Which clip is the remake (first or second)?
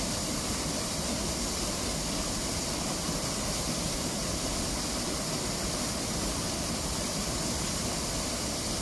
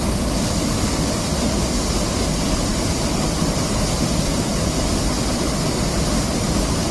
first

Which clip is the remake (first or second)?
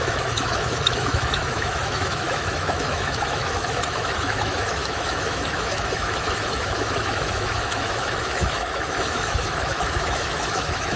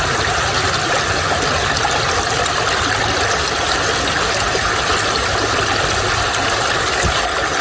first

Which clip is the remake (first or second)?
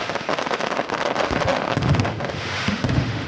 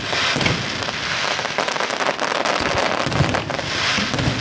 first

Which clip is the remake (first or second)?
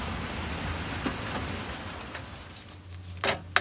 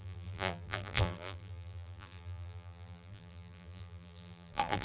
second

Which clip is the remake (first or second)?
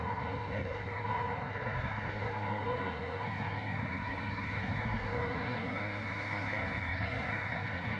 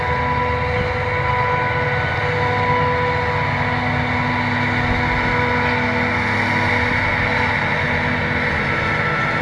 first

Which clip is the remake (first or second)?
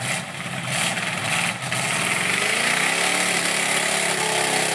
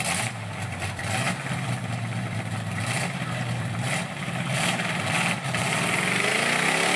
second